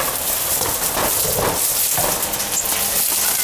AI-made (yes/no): no